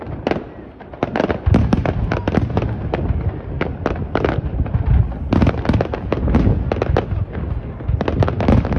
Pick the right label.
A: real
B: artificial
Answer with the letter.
A